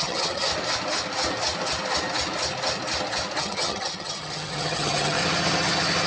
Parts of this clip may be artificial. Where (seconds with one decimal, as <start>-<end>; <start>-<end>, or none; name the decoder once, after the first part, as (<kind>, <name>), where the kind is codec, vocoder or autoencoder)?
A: 0.0-0.5 (vocoder, HiFi-GAN); 3.4-5.2